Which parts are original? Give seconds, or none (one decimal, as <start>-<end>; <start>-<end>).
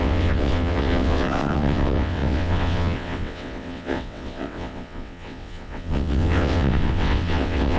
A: none